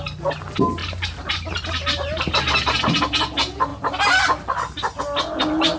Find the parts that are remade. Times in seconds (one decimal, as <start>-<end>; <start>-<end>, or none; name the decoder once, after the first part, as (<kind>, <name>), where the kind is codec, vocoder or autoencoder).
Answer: 0.8-1.5 (vocoder, BigVGAN v2)